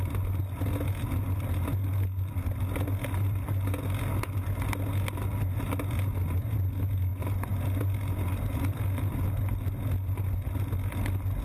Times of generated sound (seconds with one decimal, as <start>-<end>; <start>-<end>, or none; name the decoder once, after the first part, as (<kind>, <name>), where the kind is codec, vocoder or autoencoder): none